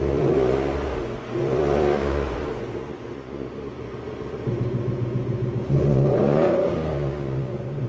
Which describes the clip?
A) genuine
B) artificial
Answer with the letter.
B